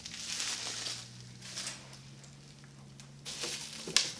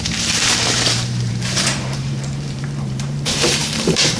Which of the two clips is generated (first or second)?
second